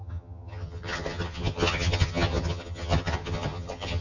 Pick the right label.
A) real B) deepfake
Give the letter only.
B